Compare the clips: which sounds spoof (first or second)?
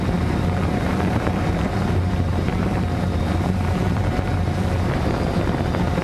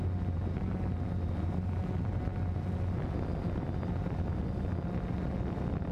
first